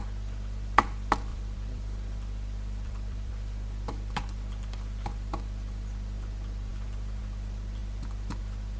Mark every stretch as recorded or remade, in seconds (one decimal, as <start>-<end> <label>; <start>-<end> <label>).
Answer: 0.0-1.3 recorded; 1.3-3.3 remade; 3.3-8.8 recorded